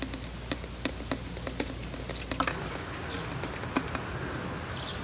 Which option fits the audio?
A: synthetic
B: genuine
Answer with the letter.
B